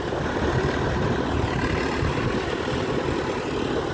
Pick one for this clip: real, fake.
real